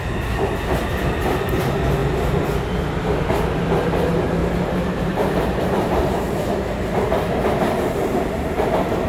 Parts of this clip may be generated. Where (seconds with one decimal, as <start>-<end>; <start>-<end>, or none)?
4.4-6.5